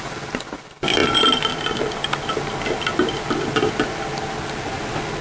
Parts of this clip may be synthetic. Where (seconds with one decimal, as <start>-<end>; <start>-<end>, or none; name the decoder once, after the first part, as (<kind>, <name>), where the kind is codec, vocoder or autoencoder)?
none